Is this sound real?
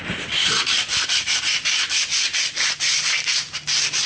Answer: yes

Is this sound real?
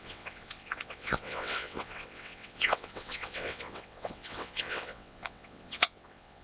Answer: no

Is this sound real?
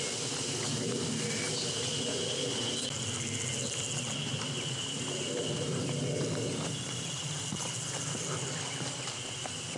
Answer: yes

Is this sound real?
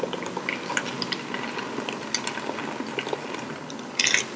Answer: yes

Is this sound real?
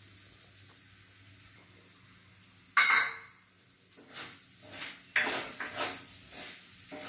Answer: yes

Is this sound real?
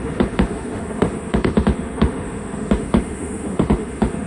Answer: no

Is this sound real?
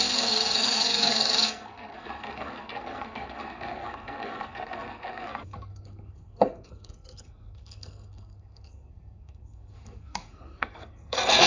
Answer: no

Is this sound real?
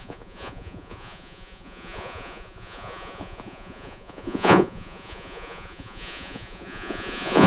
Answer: no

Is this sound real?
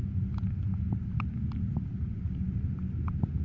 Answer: yes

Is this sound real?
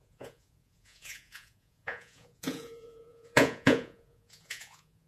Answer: no